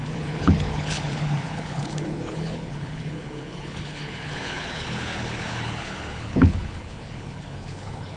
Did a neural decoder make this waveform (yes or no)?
yes